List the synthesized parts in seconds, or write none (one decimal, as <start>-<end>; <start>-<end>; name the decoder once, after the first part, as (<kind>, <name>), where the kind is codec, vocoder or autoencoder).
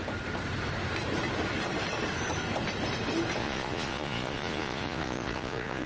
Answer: 3.4-5.9 (vocoder, Vocos)